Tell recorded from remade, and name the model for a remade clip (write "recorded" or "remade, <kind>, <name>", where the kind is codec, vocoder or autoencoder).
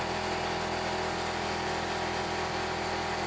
recorded